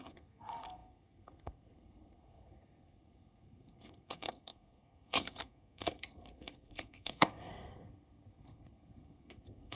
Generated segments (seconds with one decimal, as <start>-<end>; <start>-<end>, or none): 0.0-9.7